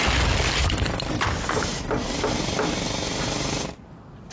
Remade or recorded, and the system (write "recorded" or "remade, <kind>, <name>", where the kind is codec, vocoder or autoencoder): recorded